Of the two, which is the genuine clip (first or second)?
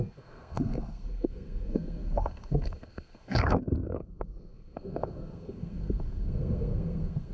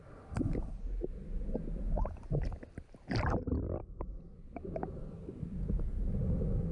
second